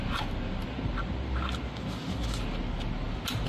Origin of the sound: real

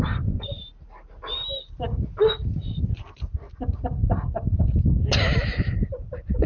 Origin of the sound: real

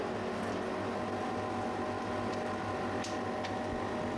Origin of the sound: real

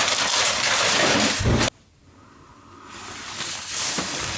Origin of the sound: real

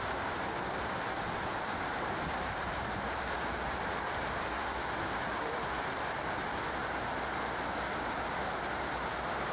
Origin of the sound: fake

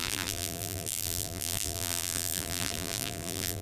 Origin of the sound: fake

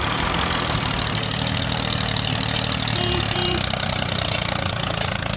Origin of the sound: real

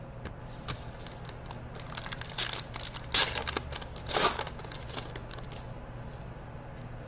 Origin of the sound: real